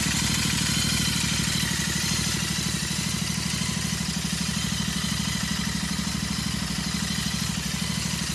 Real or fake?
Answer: real